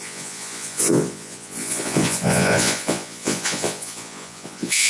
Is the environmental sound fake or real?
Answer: fake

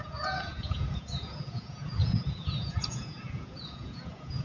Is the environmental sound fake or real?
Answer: fake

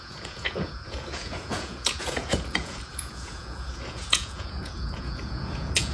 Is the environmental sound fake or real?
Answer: fake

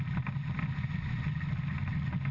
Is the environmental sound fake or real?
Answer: real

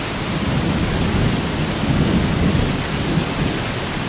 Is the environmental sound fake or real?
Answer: real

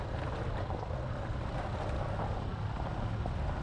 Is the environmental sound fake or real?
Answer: real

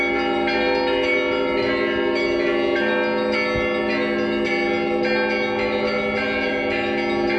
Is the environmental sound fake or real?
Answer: real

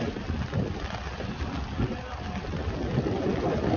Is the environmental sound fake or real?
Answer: real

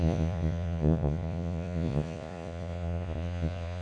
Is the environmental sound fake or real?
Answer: fake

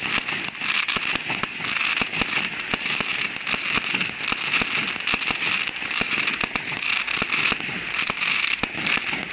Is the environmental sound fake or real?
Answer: real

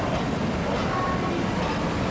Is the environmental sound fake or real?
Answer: real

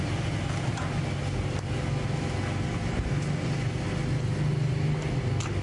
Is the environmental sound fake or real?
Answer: real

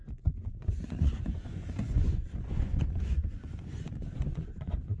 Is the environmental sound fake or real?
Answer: fake